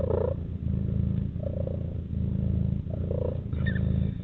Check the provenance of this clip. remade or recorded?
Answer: recorded